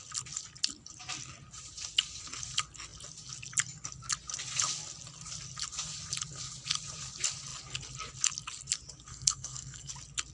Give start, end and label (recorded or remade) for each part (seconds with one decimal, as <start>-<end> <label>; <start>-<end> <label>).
0.0-9.1 recorded; 9.1-9.9 remade; 9.9-10.3 recorded